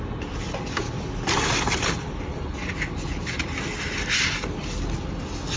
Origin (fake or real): real